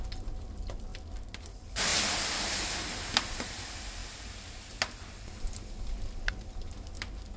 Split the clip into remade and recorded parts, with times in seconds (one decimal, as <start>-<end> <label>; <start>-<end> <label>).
0.0-7.4 recorded